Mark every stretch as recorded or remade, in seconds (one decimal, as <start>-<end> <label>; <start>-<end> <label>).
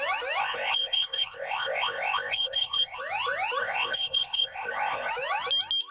0.0-0.4 recorded; 0.4-3.0 remade; 3.0-3.6 recorded; 3.6-5.1 remade; 5.1-5.9 recorded